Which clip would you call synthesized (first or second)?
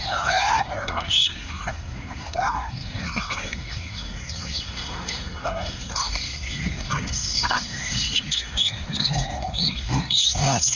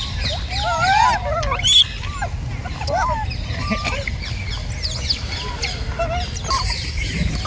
first